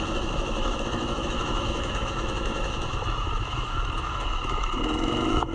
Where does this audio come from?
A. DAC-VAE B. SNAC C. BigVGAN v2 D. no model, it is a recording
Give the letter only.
A